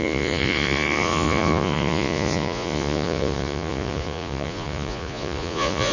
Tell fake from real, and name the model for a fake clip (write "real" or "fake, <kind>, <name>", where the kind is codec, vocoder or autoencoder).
fake, vocoder, Vocos